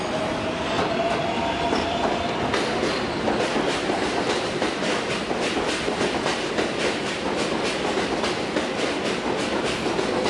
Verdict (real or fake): real